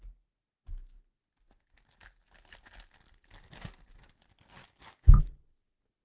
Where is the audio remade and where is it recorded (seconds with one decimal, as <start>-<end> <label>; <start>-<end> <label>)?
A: 0.0-4.6 recorded; 4.6-5.2 remade; 5.2-6.0 recorded